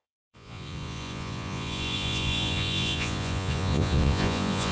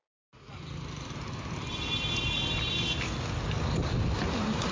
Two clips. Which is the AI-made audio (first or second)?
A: first